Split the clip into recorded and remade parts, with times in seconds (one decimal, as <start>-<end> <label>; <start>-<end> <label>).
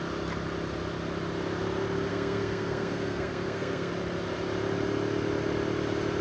0.0-2.1 recorded; 2.1-3.9 remade; 3.9-6.2 recorded